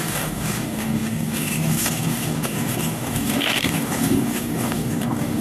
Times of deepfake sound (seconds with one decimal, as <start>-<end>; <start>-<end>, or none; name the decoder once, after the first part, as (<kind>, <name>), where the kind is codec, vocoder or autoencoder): 0.0-5.4 (codec, DAC)

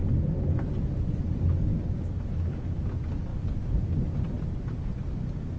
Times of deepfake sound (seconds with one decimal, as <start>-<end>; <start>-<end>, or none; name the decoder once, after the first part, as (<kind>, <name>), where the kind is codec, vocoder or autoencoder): 1.7-2.2 (codec, DAC)

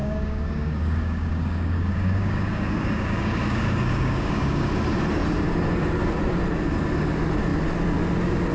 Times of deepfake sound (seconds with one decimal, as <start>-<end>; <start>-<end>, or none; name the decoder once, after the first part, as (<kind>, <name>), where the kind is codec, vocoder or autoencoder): 0.0-4.7 (codec, DAC)

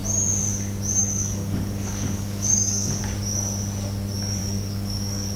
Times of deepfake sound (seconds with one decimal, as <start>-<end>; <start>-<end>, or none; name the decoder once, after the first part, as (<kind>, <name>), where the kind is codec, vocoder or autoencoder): 1.0-3.0 (codec, DAC); 4.4-5.4

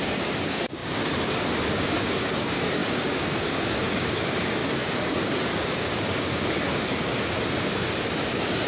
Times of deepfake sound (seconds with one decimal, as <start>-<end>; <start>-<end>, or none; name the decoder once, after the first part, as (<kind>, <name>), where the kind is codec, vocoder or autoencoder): 0.0-8.7 (codec, DAC)